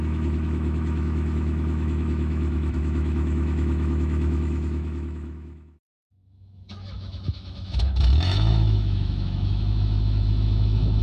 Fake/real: fake